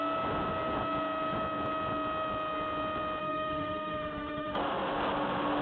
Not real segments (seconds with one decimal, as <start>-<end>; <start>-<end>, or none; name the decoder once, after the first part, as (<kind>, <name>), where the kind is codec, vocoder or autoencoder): 3.2-4.6 (autoencoder, DAC-VAE)